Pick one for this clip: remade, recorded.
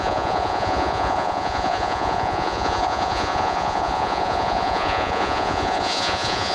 remade